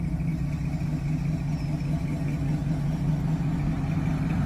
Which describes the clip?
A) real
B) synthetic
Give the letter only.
A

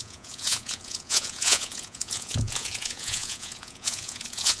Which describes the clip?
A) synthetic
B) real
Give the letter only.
A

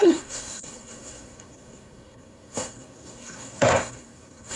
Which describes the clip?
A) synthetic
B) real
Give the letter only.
A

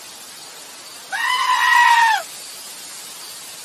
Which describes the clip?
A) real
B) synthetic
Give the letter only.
A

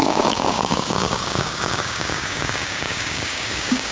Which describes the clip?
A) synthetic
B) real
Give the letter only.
A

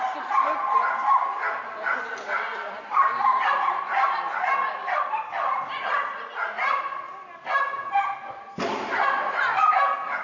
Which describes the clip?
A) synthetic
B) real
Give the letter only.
B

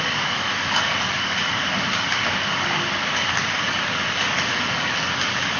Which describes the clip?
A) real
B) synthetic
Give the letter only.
B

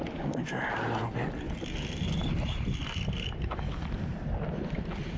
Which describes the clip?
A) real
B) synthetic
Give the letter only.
A